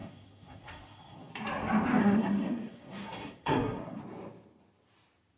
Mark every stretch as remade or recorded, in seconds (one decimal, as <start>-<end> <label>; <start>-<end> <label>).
0.0-1.3 remade; 1.3-2.0 recorded; 2.0-4.0 remade; 4.0-5.4 recorded